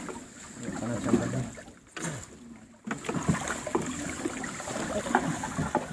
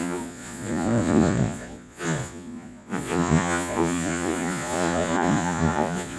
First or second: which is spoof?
second